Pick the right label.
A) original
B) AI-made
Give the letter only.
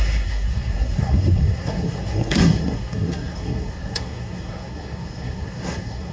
B